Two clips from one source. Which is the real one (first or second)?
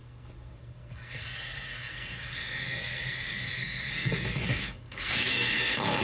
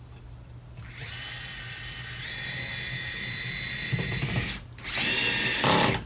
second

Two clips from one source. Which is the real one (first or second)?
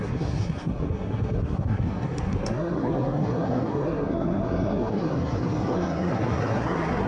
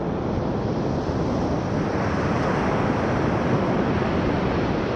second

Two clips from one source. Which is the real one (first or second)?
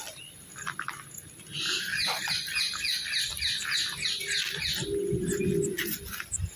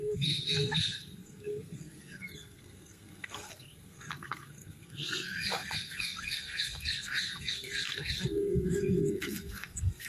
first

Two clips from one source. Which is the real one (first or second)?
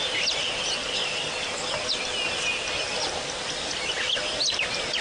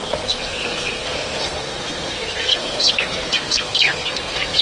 first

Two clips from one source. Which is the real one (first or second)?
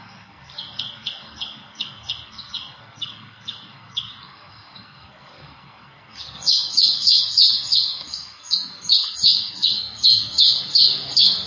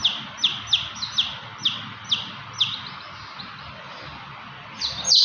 second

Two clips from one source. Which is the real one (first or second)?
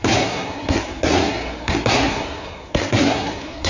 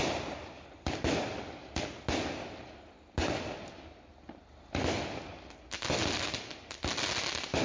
second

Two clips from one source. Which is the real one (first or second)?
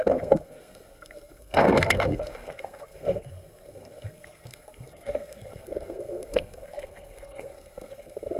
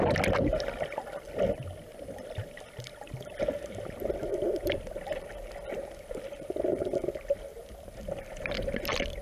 second